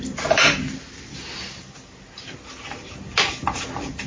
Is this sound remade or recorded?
recorded